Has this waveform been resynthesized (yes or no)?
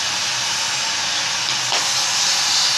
no